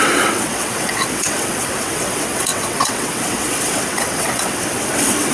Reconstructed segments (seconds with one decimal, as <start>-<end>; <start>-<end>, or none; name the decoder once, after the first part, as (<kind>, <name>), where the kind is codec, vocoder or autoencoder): 0.0-5.3 (vocoder, WaveNeXt)

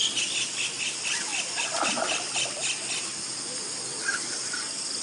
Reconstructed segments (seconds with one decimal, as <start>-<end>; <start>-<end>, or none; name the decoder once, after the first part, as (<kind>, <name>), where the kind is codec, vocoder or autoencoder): none

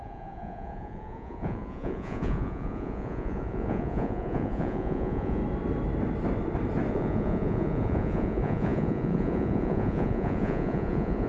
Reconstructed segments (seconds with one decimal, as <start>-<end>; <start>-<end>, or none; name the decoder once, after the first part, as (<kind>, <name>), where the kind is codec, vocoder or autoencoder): 0.0-5.4 (vocoder, Vocos); 6.9-11.3

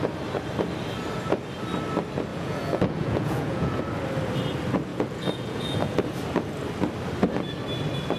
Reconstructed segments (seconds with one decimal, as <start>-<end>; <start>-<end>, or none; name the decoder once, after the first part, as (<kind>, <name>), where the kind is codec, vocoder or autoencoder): 2.3-3.8 (vocoder, Vocos); 4.9-5.9

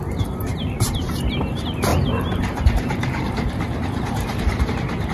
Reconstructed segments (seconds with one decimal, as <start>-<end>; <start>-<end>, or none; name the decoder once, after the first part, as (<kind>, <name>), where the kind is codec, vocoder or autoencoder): 0.5-1.5 (vocoder, BigVGAN v2); 1.9-4.6

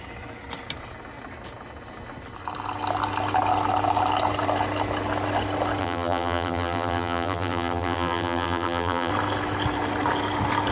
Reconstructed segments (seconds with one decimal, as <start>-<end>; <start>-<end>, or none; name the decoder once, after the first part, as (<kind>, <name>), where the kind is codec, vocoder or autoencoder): 5.8-9.1 (vocoder, BigVGAN v2)

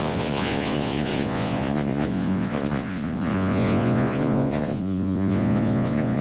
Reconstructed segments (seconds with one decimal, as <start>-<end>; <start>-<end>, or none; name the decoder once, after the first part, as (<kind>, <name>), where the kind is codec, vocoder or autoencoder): 0.0-6.2 (vocoder, Vocos)

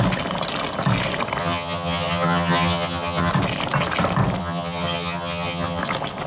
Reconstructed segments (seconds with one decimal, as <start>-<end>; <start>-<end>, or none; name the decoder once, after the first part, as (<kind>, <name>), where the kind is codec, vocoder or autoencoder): 1.4-3.3 (vocoder, HiFi-GAN); 4.4-5.8